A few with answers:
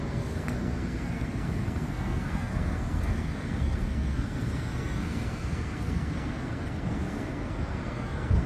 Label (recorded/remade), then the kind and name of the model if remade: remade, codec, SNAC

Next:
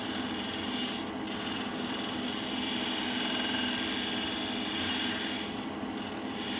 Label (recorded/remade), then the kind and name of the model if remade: recorded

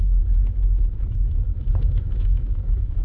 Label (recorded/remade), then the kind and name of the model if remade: remade, autoencoder, DAC-VAE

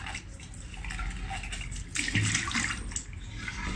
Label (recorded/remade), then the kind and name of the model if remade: recorded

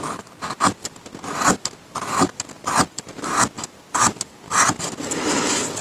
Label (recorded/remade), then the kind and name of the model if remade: recorded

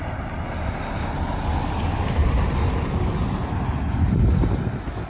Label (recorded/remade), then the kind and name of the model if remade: recorded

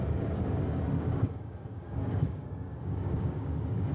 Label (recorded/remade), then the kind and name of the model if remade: remade, codec, DAC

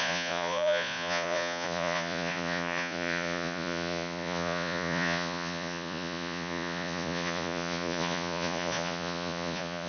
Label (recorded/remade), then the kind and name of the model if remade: remade, vocoder, Vocos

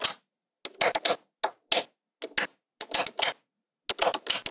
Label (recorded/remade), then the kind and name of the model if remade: recorded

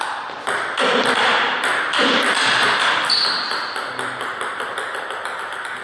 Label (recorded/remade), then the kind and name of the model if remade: remade, vocoder, BigVGAN v2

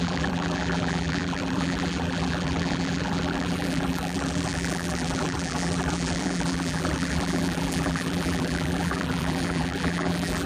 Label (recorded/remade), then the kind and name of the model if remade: remade, vocoder, BigVGAN v2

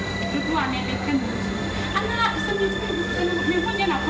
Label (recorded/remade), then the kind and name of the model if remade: recorded